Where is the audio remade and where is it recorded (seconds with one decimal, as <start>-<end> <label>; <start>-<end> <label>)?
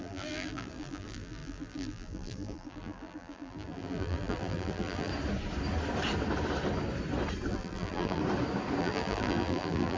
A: 0.0-5.1 remade; 5.1-7.5 recorded; 7.5-8.2 remade; 8.2-8.8 recorded; 8.8-10.0 remade